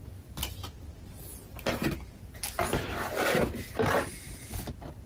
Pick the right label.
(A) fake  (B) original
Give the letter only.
B